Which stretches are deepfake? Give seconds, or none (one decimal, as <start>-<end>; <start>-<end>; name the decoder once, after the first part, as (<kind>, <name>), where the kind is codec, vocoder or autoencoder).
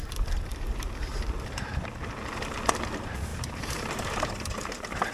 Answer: 0.5-1.1 (vocoder, BigVGAN v2); 3.3-5.1